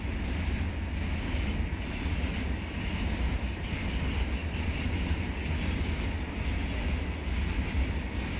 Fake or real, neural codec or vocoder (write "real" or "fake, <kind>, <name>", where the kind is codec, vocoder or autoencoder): real